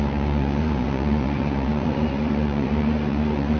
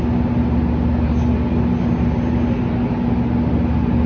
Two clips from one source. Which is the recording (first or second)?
second